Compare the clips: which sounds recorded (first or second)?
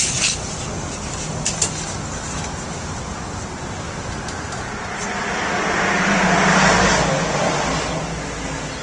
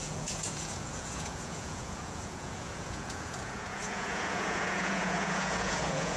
first